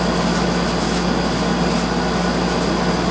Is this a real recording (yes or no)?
yes